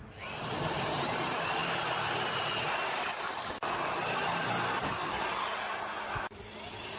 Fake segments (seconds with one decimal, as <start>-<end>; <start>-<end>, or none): none